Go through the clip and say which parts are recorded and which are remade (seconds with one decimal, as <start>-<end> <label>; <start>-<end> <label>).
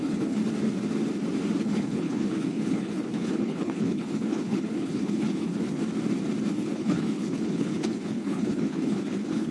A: 0.0-0.4 remade; 0.4-1.6 recorded; 1.6-5.8 remade; 5.8-6.5 recorded; 6.5-9.5 remade